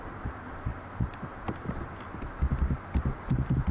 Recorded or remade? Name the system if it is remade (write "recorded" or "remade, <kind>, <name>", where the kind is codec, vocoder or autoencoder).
recorded